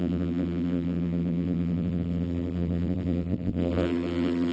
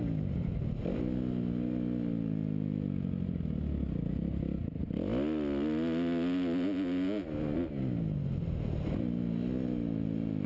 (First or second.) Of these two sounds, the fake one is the first